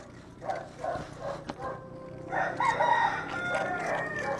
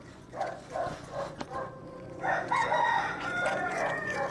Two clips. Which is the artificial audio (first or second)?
second